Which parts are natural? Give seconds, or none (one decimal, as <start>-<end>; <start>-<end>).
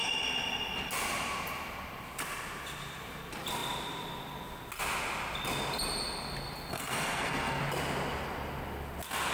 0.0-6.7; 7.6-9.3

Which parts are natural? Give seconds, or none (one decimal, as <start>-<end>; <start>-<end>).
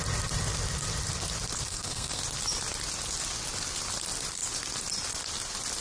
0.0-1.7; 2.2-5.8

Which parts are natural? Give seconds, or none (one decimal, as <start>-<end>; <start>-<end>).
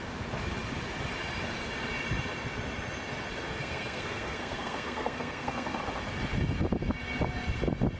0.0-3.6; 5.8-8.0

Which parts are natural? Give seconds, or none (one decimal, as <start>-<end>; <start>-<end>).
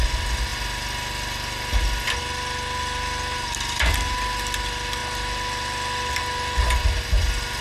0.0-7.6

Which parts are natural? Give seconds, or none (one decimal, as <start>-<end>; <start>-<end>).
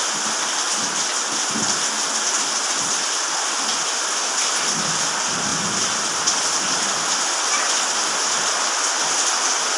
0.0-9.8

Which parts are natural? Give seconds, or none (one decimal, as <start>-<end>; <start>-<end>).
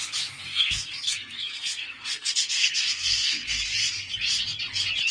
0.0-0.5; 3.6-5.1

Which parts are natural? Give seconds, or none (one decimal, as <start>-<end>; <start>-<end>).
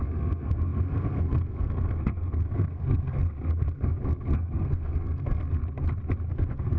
5.6-6.3